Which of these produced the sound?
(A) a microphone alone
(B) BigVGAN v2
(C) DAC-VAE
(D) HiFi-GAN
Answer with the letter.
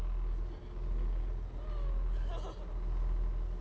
A